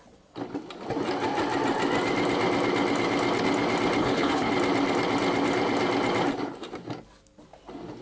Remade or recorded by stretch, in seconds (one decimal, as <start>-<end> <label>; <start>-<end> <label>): 0.0-4.0 recorded; 4.0-4.5 remade; 4.5-8.0 recorded